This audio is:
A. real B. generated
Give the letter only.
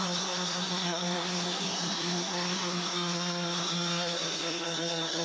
B